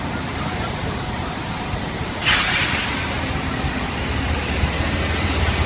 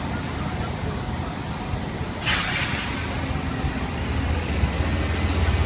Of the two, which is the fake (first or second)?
first